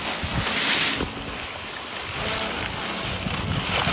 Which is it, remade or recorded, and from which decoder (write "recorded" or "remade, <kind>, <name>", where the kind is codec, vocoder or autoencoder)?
recorded